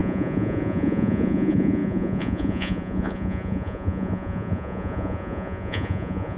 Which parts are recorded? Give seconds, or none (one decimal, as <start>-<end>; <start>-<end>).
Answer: none